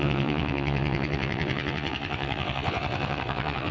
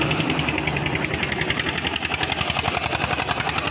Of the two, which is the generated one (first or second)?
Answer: first